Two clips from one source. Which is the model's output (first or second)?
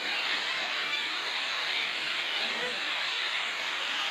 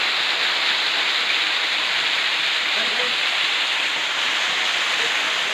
first